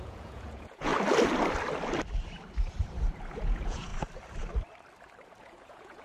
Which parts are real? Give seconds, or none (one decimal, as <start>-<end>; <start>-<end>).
0.9-3.3; 3.9-5.4